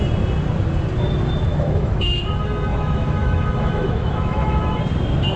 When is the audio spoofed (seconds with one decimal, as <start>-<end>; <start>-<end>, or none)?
1.5-2.3; 2.7-4.8